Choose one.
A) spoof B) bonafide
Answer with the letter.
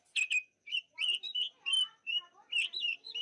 B